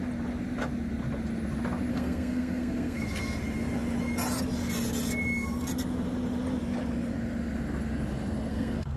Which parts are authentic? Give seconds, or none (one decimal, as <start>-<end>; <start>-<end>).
0.0-1.9; 3.0-8.5